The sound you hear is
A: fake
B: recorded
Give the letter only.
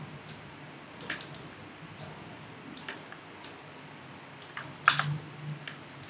B